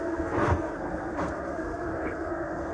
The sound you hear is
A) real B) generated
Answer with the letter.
B